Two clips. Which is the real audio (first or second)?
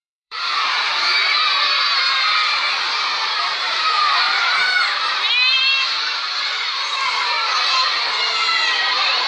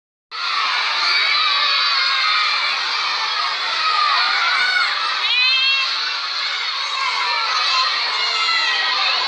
second